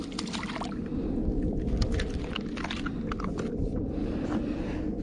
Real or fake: real